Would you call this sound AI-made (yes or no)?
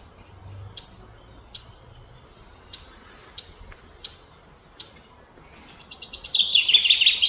no